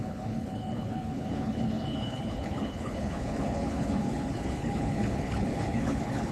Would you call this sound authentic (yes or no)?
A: no